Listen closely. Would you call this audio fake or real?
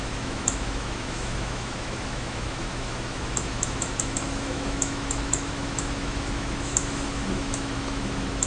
fake